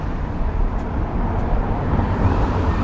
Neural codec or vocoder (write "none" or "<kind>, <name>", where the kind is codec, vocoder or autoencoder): none